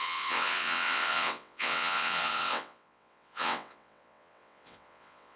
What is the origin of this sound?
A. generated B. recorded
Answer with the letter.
A